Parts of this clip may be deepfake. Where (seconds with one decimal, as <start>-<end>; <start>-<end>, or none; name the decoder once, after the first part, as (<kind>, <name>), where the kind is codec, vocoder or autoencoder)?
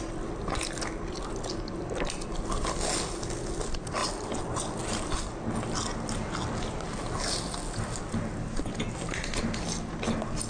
4.0-5.0 (vocoder, BigVGAN v2)